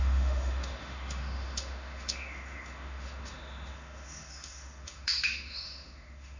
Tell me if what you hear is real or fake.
fake